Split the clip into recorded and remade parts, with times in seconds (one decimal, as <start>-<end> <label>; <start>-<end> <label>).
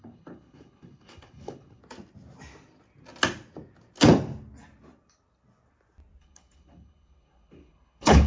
0.0-1.8 remade; 1.8-6.2 recorded; 6.2-8.3 remade